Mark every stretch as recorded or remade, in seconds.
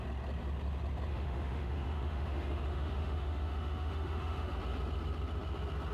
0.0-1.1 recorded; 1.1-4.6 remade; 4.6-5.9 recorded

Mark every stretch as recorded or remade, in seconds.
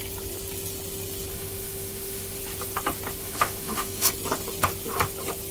0.0-1.3 recorded; 1.3-2.4 remade; 2.4-3.2 recorded; 3.2-4.1 remade; 4.1-5.5 recorded